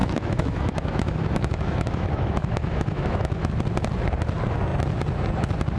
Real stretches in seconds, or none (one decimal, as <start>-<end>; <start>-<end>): 3.5-5.8